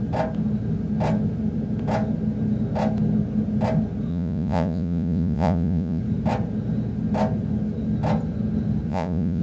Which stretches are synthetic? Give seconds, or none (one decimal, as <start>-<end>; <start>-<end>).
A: 4.1-6.0; 8.9-9.4